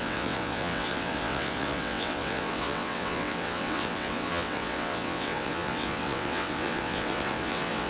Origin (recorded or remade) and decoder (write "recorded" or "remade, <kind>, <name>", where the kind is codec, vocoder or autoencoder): remade, vocoder, WaveNeXt